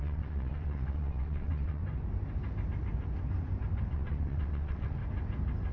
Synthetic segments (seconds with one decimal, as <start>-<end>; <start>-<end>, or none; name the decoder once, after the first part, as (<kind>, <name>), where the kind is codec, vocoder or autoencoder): 0.0-1.8 (vocoder, WaveNeXt); 3.9-5.0